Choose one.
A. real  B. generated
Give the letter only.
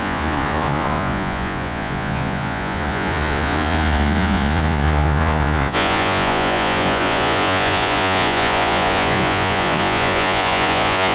B